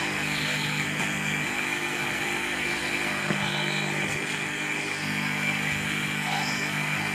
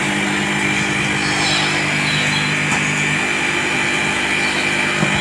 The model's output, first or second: first